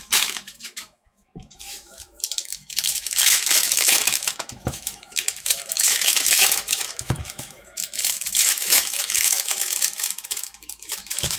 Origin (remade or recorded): remade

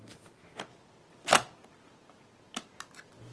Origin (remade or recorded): recorded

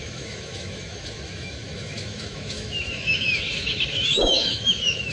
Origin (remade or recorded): remade